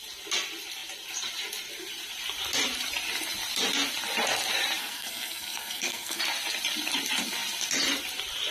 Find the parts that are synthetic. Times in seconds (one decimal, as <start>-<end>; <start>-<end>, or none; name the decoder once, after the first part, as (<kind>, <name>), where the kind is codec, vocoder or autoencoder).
4.8-6.2 (codec, SNAC)

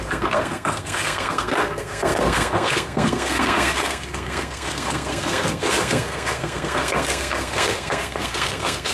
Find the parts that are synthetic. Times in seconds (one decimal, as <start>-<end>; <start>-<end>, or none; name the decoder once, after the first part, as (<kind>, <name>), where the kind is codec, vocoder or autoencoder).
0.0-8.9 (codec, SNAC)